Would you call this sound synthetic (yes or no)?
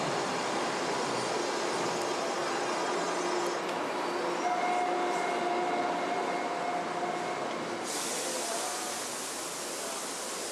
no